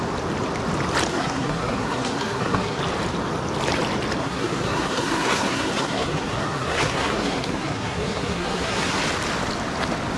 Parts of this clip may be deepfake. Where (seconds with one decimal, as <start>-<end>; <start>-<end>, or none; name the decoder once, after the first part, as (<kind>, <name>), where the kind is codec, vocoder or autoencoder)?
1.1-2.8 (codec, SNAC); 4.2-9.0